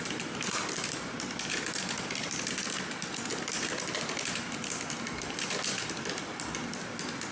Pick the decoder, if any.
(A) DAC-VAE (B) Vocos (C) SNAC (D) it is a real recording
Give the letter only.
D